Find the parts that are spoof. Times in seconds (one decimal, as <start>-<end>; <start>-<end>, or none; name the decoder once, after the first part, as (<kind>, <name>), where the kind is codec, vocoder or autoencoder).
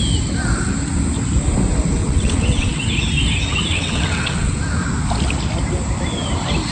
2.0-2.8 (vocoder, WaveNeXt); 3.7-4.6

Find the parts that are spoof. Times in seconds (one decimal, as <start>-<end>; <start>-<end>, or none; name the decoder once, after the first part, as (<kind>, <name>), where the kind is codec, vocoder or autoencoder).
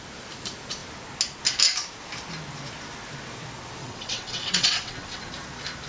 3.8-5.3 (vocoder, WaveNeXt)